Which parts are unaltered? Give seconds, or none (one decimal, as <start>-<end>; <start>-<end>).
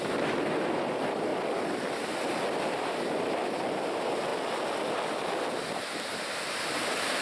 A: 1.3-2.7; 4.3-5.8